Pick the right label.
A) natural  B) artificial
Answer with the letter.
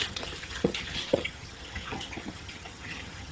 B